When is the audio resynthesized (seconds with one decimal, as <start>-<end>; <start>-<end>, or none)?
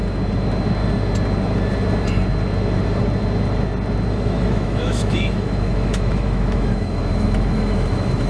4.1-8.3